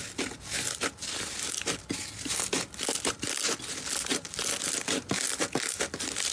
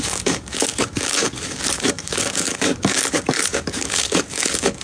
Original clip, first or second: first